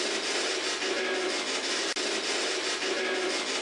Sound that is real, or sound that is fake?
real